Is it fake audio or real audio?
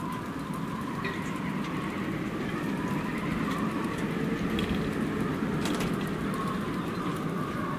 real